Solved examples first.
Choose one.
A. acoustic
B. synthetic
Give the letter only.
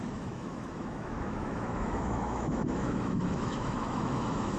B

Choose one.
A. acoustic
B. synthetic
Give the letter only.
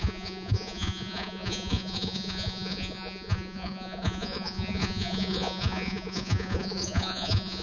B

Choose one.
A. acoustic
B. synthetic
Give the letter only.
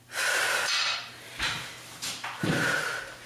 A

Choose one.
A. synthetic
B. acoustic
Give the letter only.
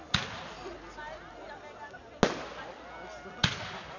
B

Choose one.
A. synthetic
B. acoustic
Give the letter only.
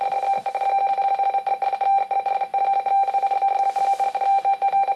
B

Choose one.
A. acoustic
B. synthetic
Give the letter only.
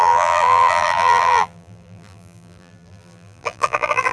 B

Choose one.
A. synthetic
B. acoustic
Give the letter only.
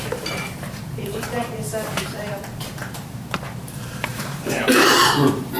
A